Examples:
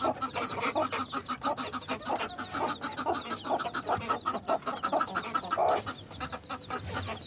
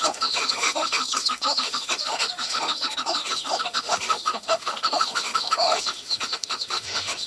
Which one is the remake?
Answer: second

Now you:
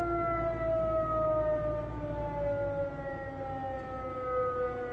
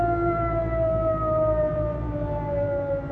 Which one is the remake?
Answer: second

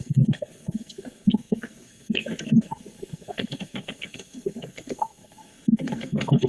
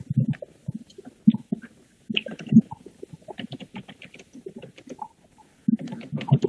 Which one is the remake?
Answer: first